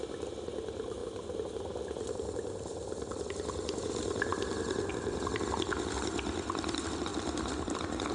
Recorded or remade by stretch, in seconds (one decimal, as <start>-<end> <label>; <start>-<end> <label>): 0.0-8.1 remade

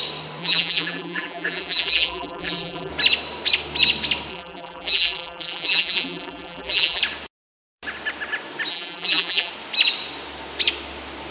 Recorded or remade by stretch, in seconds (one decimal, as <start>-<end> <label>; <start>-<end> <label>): 0.0-0.4 recorded; 0.4-2.9 remade; 2.9-4.3 recorded; 4.3-7.0 remade; 7.0-8.7 recorded; 8.7-9.5 remade; 9.5-11.3 recorded

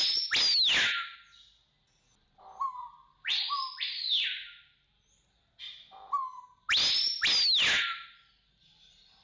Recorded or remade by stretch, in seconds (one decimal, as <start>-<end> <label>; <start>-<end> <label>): 0.0-2.8 recorded; 2.8-5.2 remade; 5.2-9.2 recorded

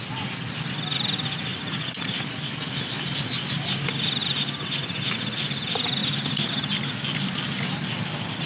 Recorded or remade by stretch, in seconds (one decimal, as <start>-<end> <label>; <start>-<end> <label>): 0.0-1.5 recorded; 1.5-2.3 remade; 2.3-4.2 recorded; 4.2-4.8 remade; 4.8-8.5 recorded

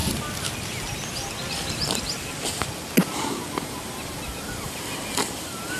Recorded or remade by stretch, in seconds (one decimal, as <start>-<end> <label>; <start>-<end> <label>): 0.0-5.8 recorded